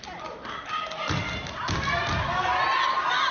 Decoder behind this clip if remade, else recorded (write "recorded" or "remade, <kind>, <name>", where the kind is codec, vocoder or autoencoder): recorded